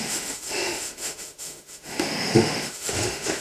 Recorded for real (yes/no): no